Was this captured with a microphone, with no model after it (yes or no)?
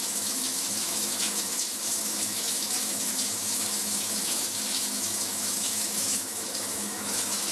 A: no